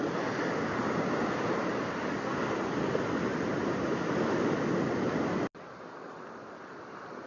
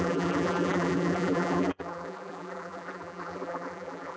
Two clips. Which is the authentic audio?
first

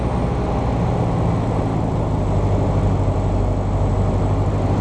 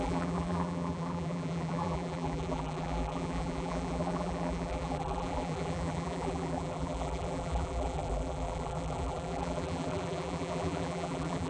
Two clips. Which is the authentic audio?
first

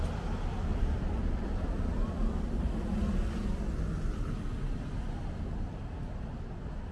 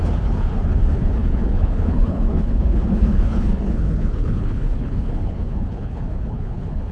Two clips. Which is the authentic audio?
first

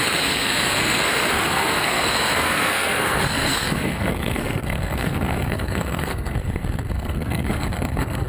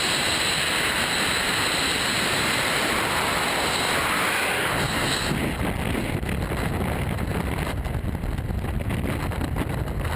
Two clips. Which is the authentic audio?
second